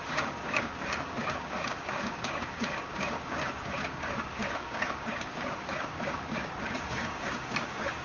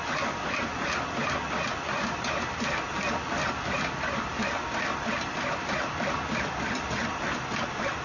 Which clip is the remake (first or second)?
first